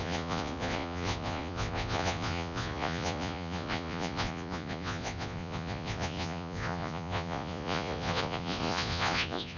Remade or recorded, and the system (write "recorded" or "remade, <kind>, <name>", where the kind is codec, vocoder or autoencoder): remade, vocoder, Vocos